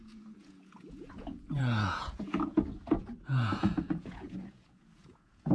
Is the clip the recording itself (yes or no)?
no